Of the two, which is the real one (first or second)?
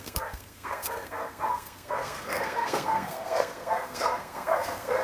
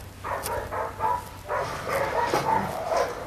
second